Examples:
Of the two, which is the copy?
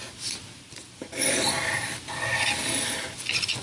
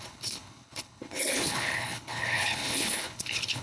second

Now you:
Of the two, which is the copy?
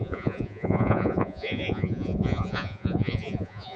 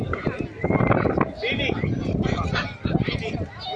first